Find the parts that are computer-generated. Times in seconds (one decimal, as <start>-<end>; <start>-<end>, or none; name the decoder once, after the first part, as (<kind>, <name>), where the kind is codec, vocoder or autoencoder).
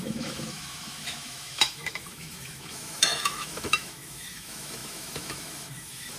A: 0.0-6.2 (autoencoder, DAC-VAE)